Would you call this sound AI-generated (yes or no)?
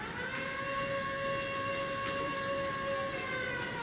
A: no